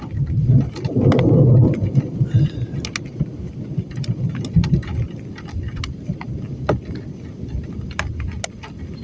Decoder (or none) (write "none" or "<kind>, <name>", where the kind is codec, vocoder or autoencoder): none